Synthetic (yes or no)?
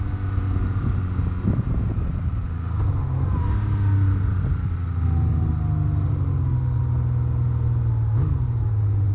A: no